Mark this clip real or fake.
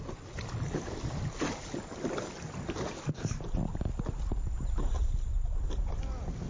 real